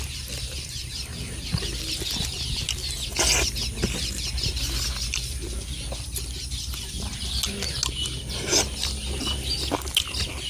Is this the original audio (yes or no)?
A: yes